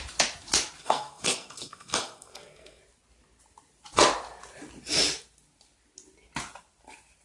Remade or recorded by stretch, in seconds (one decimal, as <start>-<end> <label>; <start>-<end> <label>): 0.0-0.8 recorded; 0.8-2.8 remade; 2.8-7.2 recorded